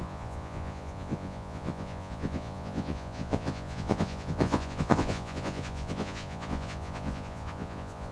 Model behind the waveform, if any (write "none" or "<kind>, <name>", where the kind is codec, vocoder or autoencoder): vocoder, Vocos